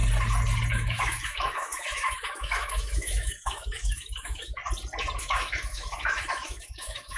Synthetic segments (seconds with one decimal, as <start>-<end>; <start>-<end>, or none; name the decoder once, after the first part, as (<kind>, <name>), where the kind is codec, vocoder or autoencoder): 0.7-4.6 (autoencoder, DAC-VAE); 5.2-7.2